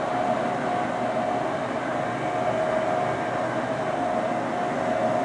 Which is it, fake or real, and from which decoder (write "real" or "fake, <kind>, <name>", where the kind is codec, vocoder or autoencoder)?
real